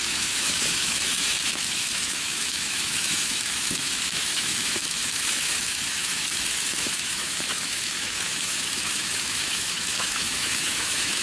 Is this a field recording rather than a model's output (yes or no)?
no